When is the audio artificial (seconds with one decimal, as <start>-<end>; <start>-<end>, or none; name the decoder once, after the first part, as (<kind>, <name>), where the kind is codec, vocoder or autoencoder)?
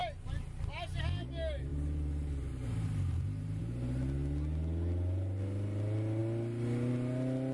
1.7-3.6 (vocoder, BigVGAN v2)